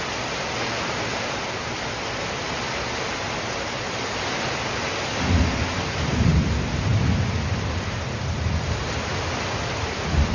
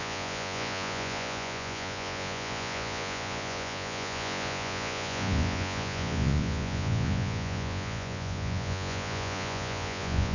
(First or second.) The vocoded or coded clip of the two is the second